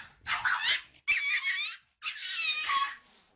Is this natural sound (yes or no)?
yes